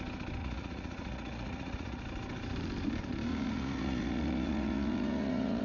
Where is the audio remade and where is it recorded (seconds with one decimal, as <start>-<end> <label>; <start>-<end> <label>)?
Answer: 0.0-0.4 recorded; 0.4-2.0 remade; 2.0-3.3 recorded; 3.3-5.6 remade